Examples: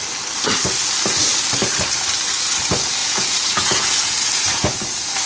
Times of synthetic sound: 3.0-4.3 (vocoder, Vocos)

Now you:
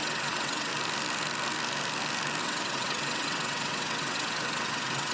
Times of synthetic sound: 0.0-0.7 (vocoder, WaveNeXt); 2.4-5.1

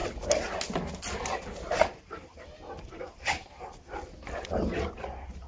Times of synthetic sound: none

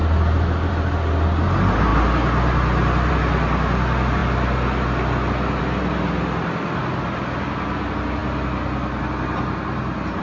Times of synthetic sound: none

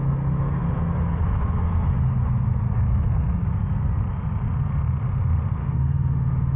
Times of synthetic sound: 5.6-6.6 (autoencoder, DAC-VAE)